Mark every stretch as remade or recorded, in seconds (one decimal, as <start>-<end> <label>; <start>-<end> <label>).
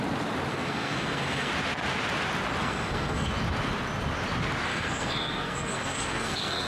0.0-0.5 recorded; 0.5-1.5 remade; 1.5-2.6 recorded; 2.6-3.3 remade; 3.3-4.7 recorded; 4.7-6.7 remade